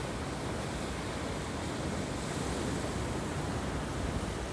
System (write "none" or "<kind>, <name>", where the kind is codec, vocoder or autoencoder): none